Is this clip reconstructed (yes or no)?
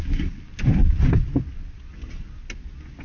no